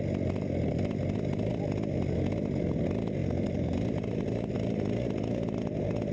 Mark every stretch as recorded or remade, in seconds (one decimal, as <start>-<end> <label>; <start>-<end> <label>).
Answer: 0.0-3.2 recorded; 3.2-4.8 remade; 4.8-6.1 recorded